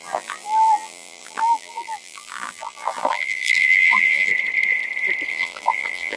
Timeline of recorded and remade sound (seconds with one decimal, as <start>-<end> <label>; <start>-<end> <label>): 0.0-4.3 remade; 4.3-5.3 recorded; 5.3-6.2 remade